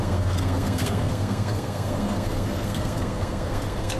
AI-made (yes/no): yes